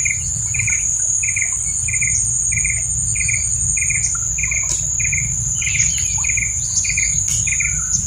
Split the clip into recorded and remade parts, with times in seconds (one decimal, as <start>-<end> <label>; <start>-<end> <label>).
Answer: 0.0-1.8 recorded; 1.8-2.6 remade; 2.6-8.1 recorded